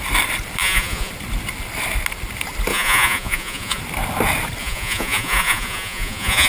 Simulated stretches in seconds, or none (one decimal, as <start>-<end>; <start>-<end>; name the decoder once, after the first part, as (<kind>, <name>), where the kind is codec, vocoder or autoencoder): 0.6-1.1 (vocoder, Vocos); 2.7-3.8; 4.6-6.5